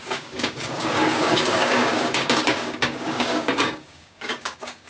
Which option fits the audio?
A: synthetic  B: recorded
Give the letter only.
A